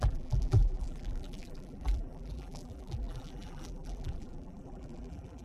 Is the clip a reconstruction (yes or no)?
yes